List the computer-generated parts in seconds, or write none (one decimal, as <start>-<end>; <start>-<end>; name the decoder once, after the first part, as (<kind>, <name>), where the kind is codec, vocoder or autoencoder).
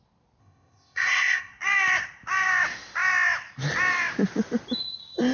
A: 0.4-1.5 (codec, ZipCodec)